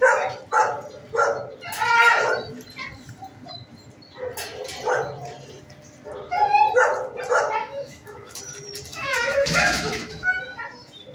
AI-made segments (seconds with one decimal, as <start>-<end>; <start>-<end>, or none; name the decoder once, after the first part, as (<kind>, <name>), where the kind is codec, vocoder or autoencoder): 7.6-8.4 (autoencoder, DAC-VAE); 8.9-10.4